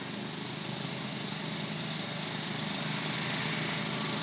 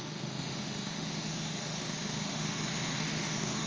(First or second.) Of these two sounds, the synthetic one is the second